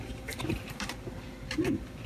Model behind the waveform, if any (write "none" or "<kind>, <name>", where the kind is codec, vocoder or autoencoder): vocoder, BigVGAN v2